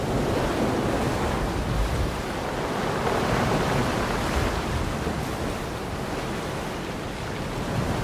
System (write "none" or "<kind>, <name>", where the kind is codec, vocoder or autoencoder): none